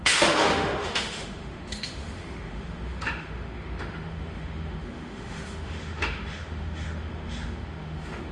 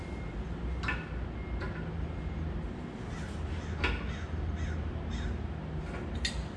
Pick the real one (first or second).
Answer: second